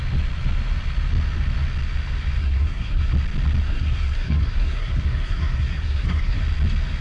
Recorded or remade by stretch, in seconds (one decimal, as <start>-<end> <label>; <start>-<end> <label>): 0.0-2.4 recorded; 2.4-3.1 remade; 3.1-3.6 recorded; 3.6-6.4 remade; 6.4-7.0 recorded